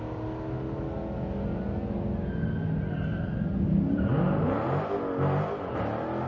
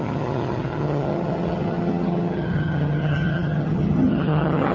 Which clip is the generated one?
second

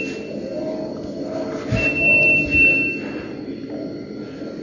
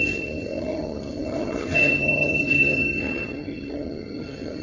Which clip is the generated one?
second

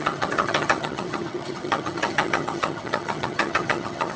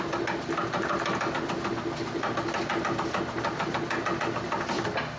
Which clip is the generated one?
first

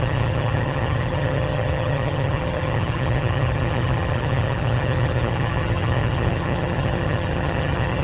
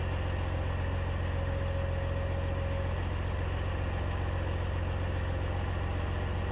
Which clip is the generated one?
first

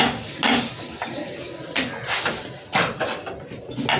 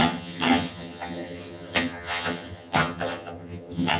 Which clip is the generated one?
second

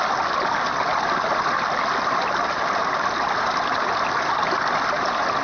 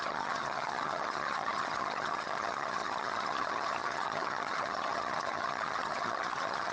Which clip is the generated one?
second